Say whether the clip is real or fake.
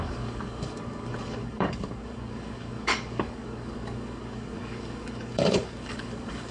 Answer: fake